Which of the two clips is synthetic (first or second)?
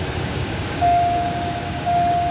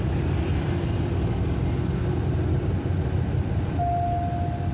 first